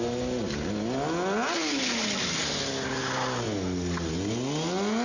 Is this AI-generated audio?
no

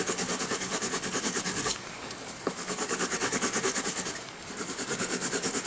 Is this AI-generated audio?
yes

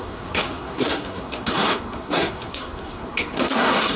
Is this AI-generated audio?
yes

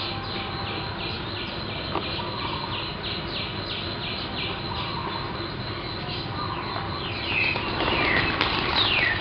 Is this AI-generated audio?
no